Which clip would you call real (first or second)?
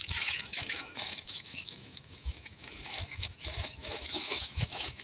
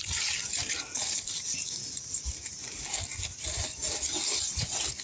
second